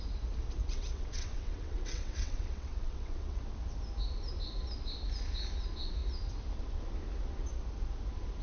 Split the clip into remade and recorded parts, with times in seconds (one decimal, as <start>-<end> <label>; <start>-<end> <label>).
0.0-0.6 recorded; 0.6-3.4 remade; 3.4-8.4 recorded